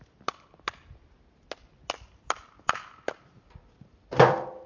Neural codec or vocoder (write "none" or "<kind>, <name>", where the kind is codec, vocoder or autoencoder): none